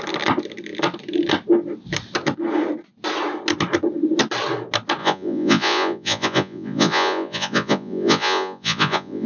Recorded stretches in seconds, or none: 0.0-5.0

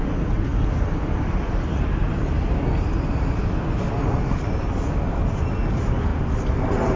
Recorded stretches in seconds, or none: 0.0-7.0